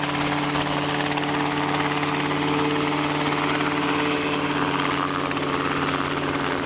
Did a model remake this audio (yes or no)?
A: no